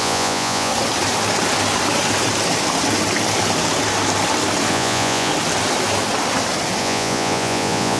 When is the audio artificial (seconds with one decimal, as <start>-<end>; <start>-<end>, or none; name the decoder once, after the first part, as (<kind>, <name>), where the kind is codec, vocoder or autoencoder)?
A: 0.0-0.7 (vocoder, Vocos); 4.7-5.3; 6.8-8.0